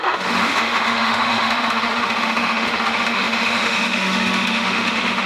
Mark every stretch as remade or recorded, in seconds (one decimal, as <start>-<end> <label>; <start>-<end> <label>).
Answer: 0.0-5.3 remade